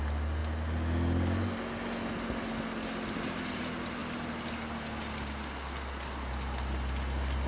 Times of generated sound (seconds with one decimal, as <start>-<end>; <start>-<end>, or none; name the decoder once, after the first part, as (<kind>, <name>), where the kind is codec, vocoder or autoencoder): none